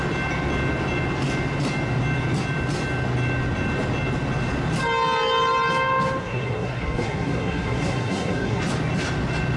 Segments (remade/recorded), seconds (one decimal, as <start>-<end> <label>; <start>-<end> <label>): 0.0-6.2 recorded; 6.2-8.6 remade; 8.6-9.6 recorded